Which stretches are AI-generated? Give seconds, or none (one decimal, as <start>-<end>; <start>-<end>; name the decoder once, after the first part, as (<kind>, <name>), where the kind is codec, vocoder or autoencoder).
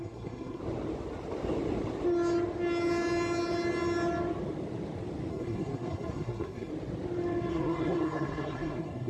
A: 0.0-0.6 (codec, SNAC); 5.3-6.7; 7.5-9.1